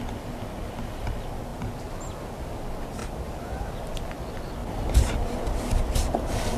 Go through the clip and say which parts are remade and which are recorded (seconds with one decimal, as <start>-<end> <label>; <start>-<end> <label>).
0.0-1.5 recorded; 1.5-2.4 remade; 2.4-3.0 recorded; 3.0-3.7 remade; 3.7-4.6 recorded; 4.6-6.6 remade